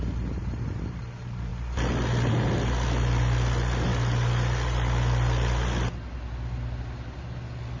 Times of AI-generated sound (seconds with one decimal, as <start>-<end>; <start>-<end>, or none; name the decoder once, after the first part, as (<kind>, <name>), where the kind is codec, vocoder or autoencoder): none